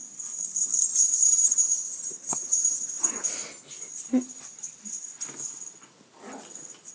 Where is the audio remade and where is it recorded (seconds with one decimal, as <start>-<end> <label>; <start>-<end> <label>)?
0.0-0.9 recorded; 0.9-3.1 remade; 3.1-6.9 recorded